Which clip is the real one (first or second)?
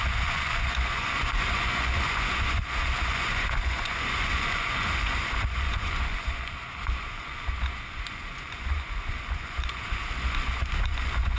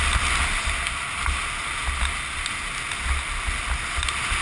second